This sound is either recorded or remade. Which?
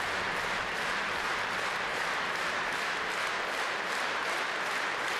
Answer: remade